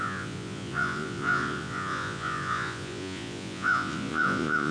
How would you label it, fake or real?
fake